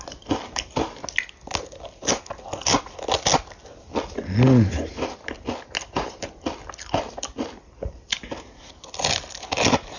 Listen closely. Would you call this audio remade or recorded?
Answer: recorded